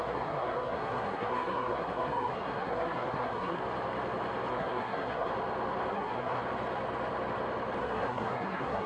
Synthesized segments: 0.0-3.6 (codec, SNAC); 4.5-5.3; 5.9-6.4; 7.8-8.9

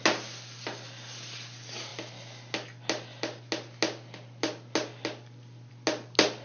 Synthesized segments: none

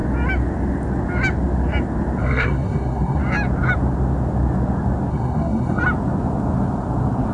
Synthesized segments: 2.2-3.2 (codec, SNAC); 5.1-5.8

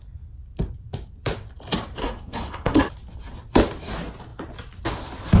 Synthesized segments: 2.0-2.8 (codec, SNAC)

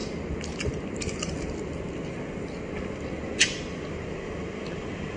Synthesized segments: none